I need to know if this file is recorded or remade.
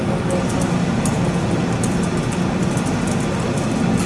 recorded